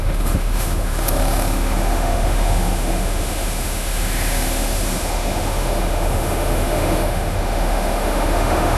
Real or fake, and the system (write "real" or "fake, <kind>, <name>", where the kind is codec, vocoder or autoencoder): fake, autoencoder, DAC-VAE